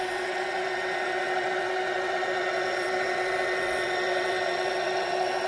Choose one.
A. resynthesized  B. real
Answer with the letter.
A